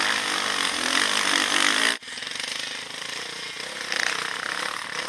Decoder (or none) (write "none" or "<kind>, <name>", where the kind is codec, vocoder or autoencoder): none